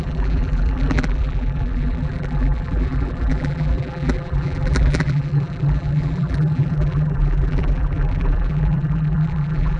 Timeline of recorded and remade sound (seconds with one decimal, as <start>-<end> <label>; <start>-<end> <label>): 0.0-9.8 remade

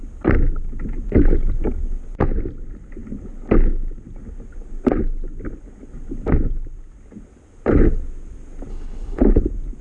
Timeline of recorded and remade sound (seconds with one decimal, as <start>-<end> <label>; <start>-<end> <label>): 0.0-8.7 recorded; 8.7-9.2 remade; 9.2-9.8 recorded

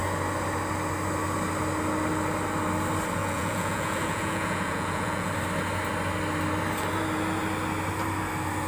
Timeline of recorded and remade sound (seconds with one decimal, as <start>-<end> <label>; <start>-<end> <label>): 0.0-3.2 recorded; 3.2-5.3 remade; 5.3-8.7 recorded

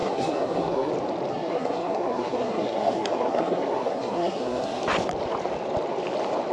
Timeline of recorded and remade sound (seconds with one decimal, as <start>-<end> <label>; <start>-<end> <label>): 0.0-0.9 remade; 0.9-1.3 recorded; 1.3-4.8 remade; 4.8-6.5 recorded